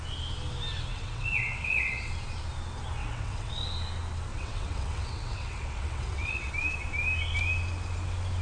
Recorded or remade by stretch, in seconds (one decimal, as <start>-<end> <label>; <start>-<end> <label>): 0.0-0.9 recorded; 0.9-2.1 remade; 2.1-3.0 recorded; 3.0-3.5 remade; 3.5-4.3 recorded; 4.3-6.5 remade; 6.5-8.4 recorded